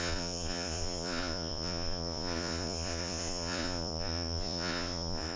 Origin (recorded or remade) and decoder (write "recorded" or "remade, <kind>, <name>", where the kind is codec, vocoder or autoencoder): remade, vocoder, Vocos